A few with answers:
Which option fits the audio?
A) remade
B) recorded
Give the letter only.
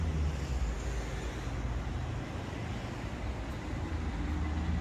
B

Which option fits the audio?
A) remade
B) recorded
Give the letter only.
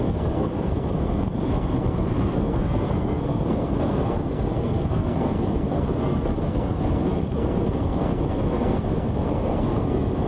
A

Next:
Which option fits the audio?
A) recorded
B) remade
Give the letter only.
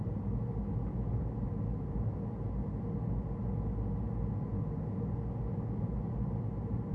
A